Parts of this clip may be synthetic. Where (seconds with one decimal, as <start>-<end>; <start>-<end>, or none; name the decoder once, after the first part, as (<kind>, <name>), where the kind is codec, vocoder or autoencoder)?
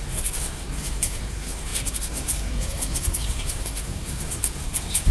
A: 0.0-5.1 (codec, SNAC)